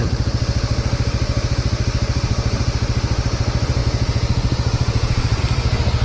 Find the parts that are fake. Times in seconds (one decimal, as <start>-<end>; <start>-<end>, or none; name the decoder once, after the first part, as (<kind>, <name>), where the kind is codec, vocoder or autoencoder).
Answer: 3.8-5.4 (vocoder, Vocos)

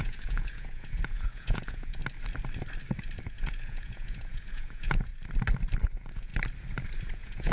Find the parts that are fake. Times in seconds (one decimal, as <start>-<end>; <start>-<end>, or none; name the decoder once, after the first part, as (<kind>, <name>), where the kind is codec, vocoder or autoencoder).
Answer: 0.0-2.0 (vocoder, Vocos); 3.2-5.1; 5.8-6.3; 7.1-7.5

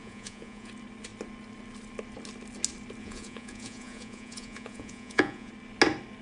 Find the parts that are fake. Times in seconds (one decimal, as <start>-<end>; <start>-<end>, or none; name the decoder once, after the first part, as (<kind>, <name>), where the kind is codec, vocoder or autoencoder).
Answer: 0.0-0.7 (vocoder, Vocos); 3.0-5.5